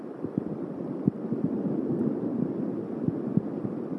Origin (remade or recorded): recorded